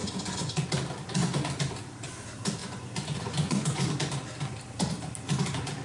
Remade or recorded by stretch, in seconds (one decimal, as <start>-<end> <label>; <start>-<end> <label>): 0.0-0.7 remade; 0.7-2.6 recorded; 2.6-3.9 remade; 3.9-5.8 recorded